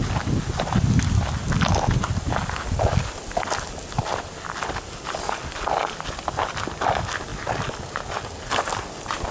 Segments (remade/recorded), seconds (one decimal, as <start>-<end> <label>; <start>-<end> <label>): 0.0-9.3 recorded